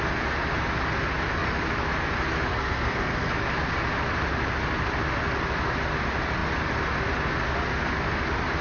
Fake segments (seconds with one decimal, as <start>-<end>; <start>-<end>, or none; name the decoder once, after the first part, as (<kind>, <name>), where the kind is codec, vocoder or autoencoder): 2.5-3.3 (codec, SNAC)